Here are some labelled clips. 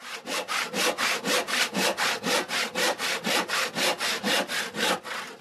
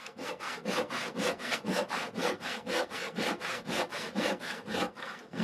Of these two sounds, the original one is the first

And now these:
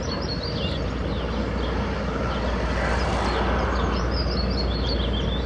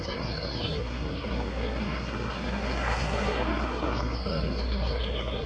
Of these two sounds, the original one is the first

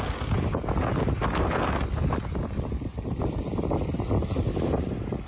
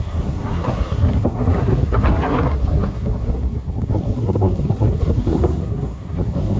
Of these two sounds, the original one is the first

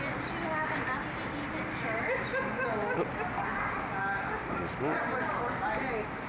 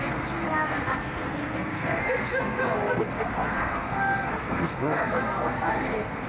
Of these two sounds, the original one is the first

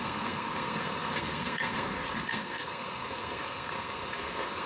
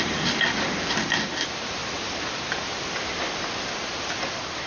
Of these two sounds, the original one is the second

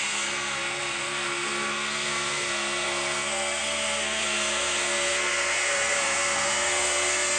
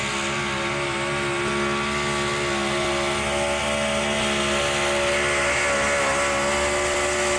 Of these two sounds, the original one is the second